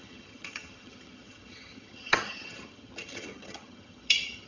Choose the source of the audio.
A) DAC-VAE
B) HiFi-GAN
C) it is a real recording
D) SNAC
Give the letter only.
B